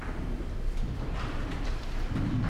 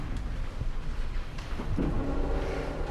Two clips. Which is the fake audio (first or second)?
first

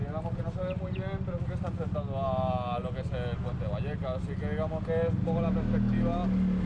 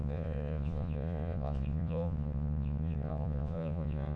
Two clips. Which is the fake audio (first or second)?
second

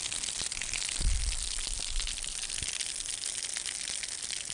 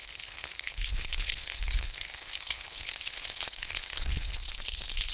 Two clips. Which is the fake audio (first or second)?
second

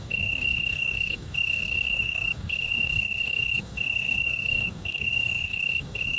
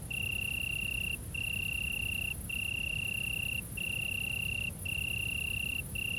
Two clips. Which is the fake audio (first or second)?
first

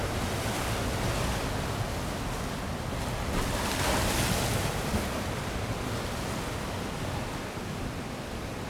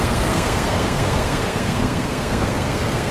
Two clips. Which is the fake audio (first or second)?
second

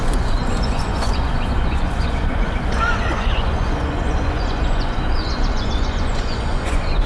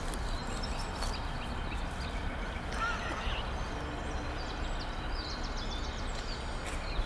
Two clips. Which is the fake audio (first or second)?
first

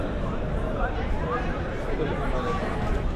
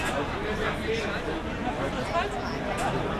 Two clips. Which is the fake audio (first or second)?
first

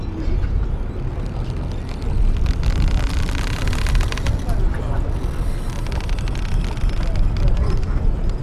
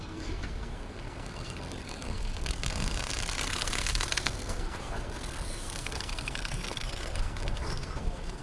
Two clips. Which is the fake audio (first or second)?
second